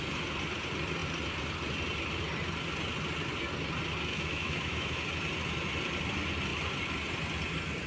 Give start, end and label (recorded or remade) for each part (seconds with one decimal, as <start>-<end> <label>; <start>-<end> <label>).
0.0-4.1 recorded; 4.1-5.0 remade; 5.0-7.9 recorded